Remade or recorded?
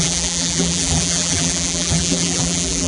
remade